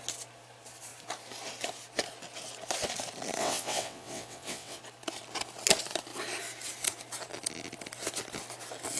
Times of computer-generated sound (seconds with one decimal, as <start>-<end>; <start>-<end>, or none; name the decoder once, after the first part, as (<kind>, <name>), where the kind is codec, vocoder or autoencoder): 3.4-4.8 (vocoder, WaveNeXt)